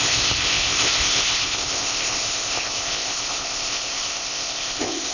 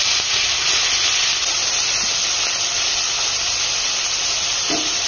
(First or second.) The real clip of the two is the second